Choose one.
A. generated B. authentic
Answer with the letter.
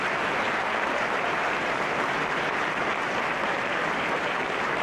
A